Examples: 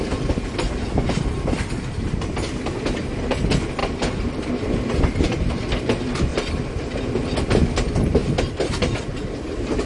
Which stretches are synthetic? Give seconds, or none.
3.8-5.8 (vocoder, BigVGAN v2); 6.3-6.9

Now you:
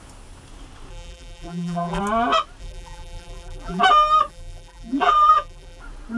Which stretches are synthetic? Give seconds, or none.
0.9-2.0 (vocoder, BigVGAN v2); 2.6-3.8; 4.3-5.8

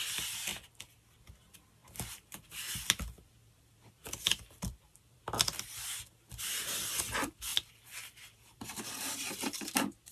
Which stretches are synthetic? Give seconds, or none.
1.8-5.2 (vocoder, BigVGAN v2); 7.5-9.6

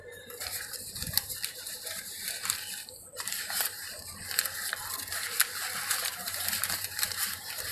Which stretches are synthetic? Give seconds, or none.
0.0-4.0 (vocoder, BigVGAN v2); 6.0-7.7

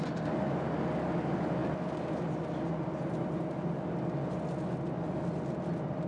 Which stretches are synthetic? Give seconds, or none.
none

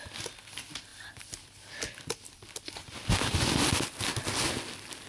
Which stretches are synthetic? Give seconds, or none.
0.9-4.0 (vocoder, BigVGAN v2)